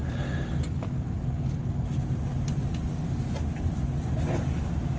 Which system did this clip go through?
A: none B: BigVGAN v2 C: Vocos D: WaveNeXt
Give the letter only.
A